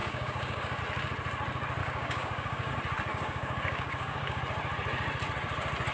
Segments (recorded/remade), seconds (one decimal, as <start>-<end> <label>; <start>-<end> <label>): 0.0-0.8 remade; 0.8-1.8 recorded; 1.8-2.7 remade; 2.7-3.1 recorded; 3.1-4.4 remade; 4.4-5.9 recorded